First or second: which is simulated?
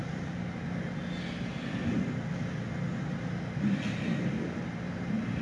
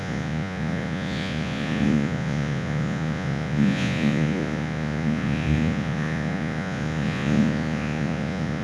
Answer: second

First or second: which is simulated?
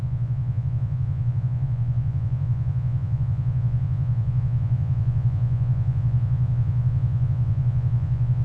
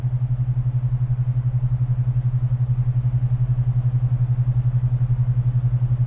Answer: first